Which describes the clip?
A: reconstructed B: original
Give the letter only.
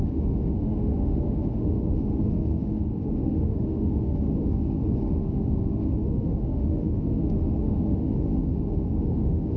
A